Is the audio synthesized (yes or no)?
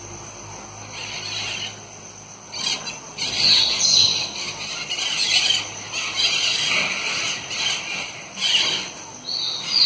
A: no